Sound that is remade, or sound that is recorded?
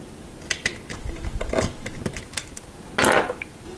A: recorded